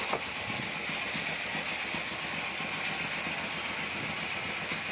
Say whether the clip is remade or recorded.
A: recorded